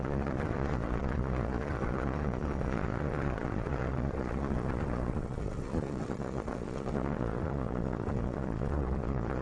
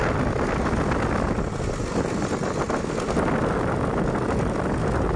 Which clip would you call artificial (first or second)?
first